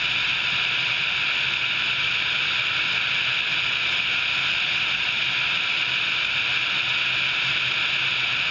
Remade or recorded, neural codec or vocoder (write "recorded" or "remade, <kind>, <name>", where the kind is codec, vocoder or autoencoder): recorded